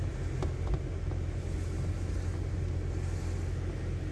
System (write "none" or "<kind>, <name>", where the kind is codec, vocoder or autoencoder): none